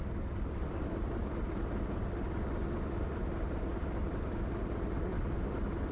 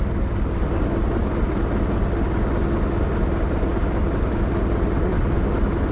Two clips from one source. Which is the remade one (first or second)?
first